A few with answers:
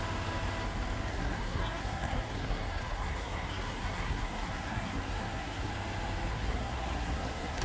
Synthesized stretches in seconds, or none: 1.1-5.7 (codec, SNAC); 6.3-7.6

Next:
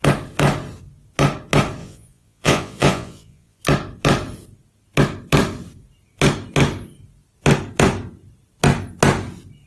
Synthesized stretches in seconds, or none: 1.8-3.6 (vocoder, Vocos)

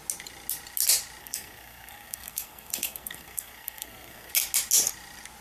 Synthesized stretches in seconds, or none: 1.2-4.3 (codec, SNAC)

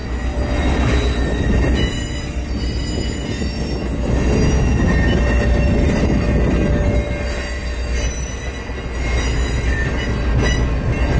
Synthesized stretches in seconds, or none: none

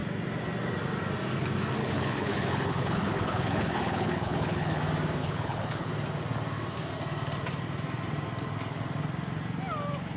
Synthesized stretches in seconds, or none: 1.8-4.8 (codec, HILCodec); 5.2-5.9

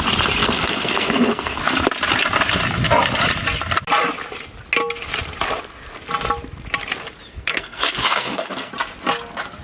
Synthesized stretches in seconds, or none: 0.4-1.6 (codec, SNAC); 7.3-8.7